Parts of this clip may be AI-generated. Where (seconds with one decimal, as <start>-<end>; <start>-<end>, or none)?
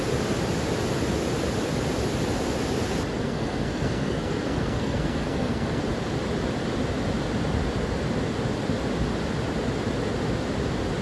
3.2-5.8